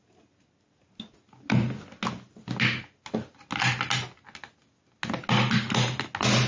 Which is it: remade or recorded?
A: recorded